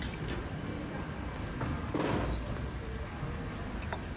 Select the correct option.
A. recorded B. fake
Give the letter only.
A